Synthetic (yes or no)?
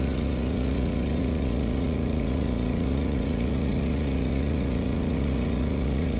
yes